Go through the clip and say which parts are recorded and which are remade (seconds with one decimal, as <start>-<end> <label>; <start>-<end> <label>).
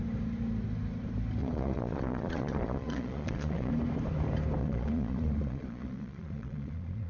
0.0-1.4 recorded; 1.4-3.7 remade; 3.7-4.6 recorded; 4.6-7.1 remade